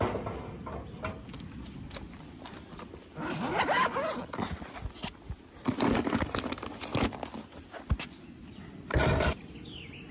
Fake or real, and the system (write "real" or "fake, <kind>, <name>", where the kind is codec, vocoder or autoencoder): real